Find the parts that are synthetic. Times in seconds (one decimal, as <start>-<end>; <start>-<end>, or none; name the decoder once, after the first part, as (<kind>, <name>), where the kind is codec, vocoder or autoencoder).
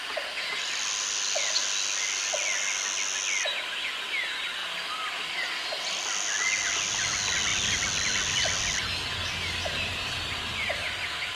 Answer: none